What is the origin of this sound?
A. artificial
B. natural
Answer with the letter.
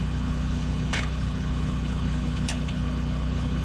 A